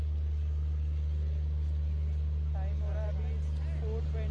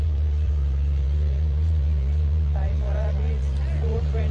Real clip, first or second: first